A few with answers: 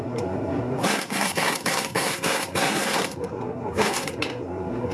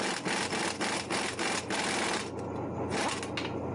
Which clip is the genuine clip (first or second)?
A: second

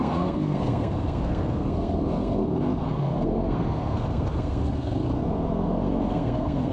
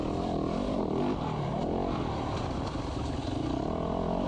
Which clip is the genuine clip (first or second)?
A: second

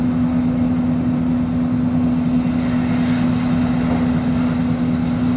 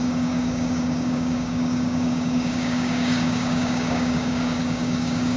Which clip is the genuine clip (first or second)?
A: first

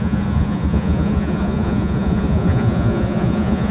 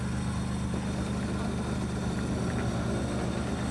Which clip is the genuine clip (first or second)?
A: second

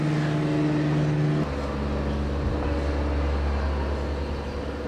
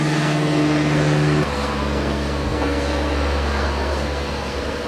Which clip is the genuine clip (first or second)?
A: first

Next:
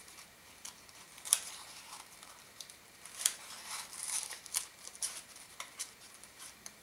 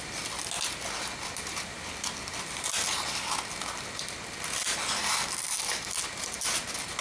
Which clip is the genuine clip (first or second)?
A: second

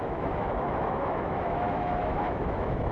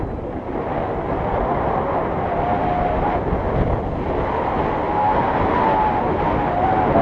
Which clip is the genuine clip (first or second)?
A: second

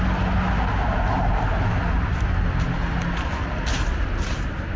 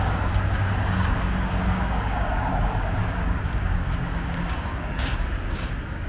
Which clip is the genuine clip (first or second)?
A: first